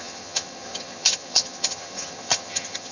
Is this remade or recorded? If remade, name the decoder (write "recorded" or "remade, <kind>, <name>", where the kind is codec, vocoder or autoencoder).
remade, vocoder, HiFi-GAN